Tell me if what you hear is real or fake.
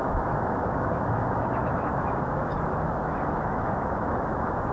fake